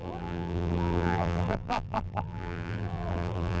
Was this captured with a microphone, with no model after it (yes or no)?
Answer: no